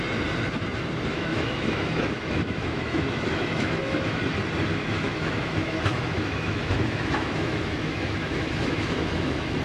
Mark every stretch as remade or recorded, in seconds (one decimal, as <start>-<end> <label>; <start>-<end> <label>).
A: 0.0-1.1 recorded; 1.1-4.2 remade; 4.2-4.7 recorded; 4.7-9.6 remade